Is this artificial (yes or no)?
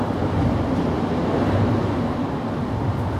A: no